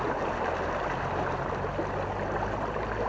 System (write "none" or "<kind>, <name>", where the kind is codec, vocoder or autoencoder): none